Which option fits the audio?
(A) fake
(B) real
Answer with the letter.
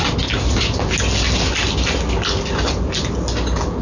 B